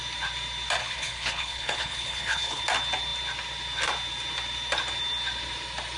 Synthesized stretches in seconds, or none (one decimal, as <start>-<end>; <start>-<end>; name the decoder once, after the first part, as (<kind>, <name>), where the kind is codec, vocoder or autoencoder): 0.8-2.6 (codec, HILCodec)